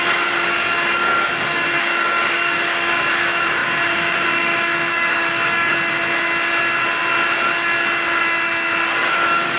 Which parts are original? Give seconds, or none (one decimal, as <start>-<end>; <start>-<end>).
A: 5.7-8.9